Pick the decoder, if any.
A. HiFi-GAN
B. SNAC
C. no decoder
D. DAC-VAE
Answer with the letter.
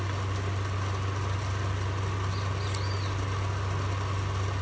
C